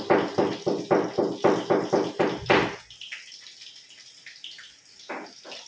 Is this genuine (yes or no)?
yes